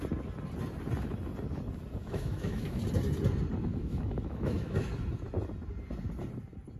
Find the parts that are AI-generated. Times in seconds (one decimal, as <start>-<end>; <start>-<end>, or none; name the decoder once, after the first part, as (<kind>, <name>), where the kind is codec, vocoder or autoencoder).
2.0-2.8 (autoencoder, DAC-VAE); 3.7-4.9